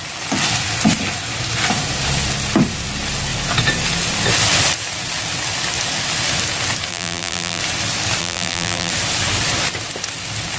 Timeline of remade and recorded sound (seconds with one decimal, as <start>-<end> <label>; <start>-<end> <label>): 0.0-6.9 recorded; 6.9-7.6 remade; 7.6-8.2 recorded; 8.2-8.9 remade; 8.9-10.6 recorded